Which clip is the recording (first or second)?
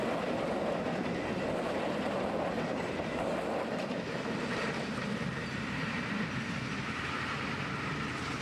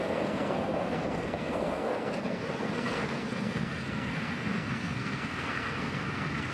first